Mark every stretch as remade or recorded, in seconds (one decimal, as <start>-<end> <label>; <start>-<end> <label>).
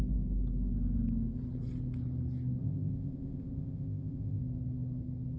0.0-2.6 recorded; 2.6-4.4 remade; 4.4-5.4 recorded